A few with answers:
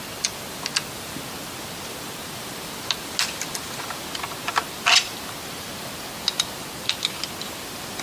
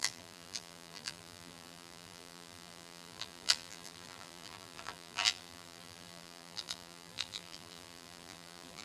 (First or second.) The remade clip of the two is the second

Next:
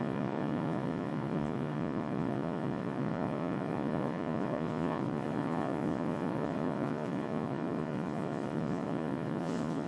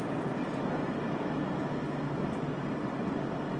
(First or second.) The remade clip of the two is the first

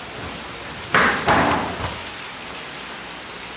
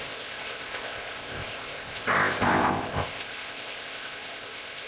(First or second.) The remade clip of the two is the second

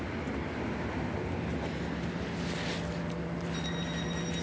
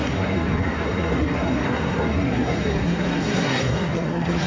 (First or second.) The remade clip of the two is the second